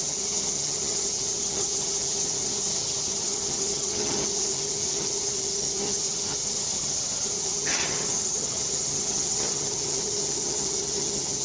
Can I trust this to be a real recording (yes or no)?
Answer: no